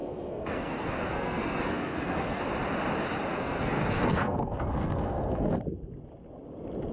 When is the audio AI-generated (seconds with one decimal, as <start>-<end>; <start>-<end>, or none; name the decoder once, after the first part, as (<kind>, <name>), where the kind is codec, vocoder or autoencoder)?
0.0-2.4 (codec, SNAC); 3.4-5.6